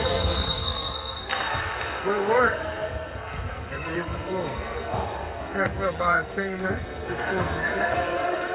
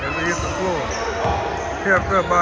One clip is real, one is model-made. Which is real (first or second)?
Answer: second